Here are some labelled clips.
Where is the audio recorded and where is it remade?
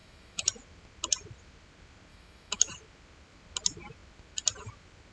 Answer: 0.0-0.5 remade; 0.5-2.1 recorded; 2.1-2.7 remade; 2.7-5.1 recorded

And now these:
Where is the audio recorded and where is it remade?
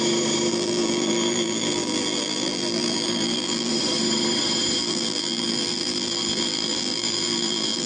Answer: 0.0-0.5 recorded; 0.5-3.7 remade; 3.7-4.8 recorded; 4.8-7.9 remade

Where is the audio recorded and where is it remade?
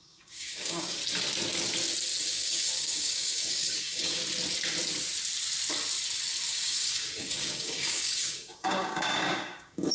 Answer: 0.0-1.0 remade; 1.0-2.2 recorded; 2.2-4.2 remade; 4.2-6.5 recorded; 6.5-9.9 remade